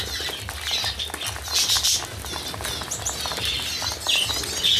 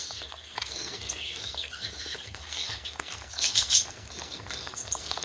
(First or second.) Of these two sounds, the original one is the first